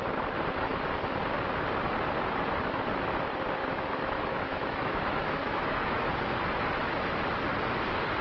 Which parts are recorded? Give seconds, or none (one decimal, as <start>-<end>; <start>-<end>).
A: 0.0-3.6; 6.0-8.2